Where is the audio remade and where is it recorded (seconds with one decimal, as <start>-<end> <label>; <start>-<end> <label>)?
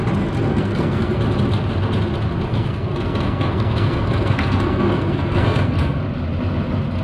0.0-0.5 recorded; 0.5-1.2 remade; 1.2-2.5 recorded; 2.5-6.0 remade; 6.0-7.0 recorded